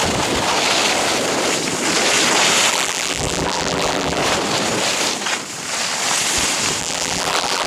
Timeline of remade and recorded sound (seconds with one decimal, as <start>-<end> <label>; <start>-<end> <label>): 0.0-2.7 recorded; 2.7-4.2 remade; 4.2-6.8 recorded; 6.8-7.7 remade